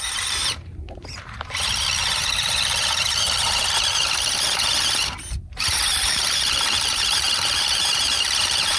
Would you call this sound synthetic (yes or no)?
yes